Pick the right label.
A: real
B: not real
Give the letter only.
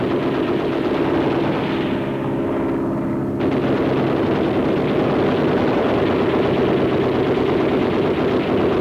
A